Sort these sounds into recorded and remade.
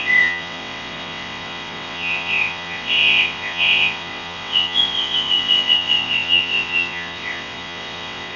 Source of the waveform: remade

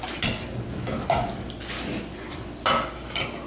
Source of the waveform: recorded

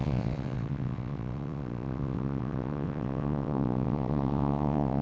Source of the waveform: remade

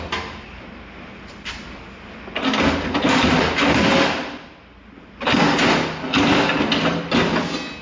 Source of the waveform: recorded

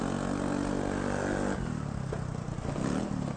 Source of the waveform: recorded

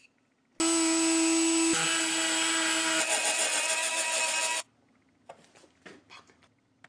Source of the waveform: recorded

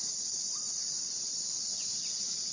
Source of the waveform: remade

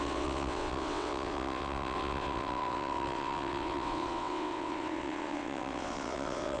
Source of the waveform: remade